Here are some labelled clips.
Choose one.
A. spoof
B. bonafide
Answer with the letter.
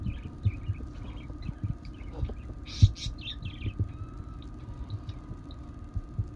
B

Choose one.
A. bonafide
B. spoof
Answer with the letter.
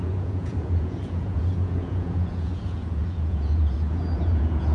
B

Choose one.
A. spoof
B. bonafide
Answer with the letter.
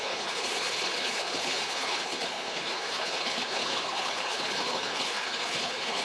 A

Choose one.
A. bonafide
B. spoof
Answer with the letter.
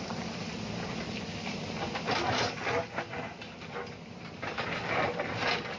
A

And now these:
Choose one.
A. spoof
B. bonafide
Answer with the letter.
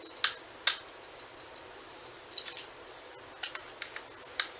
B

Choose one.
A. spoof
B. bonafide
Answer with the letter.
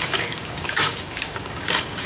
A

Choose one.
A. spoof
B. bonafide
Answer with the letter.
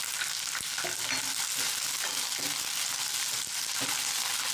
B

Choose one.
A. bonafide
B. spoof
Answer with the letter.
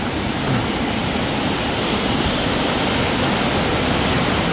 A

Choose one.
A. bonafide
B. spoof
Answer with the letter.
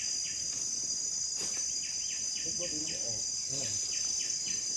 A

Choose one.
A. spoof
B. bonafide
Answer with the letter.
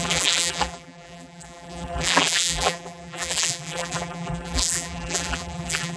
A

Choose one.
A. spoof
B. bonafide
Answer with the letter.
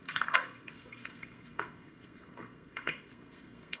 A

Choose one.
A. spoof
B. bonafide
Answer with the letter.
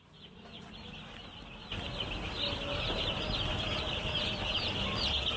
B